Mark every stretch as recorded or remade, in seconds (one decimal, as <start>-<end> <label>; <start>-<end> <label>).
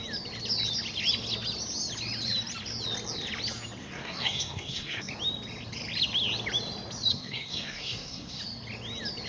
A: 0.0-3.8 recorded; 3.8-5.1 remade; 5.1-7.1 recorded; 7.1-8.4 remade; 8.4-9.3 recorded